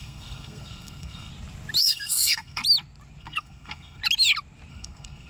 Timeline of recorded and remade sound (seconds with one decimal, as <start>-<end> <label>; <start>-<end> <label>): 0.0-1.3 remade; 1.3-1.8 recorded; 1.8-2.6 remade; 2.6-3.2 recorded; 3.2-4.0 remade; 4.0-4.7 recorded; 4.7-5.3 remade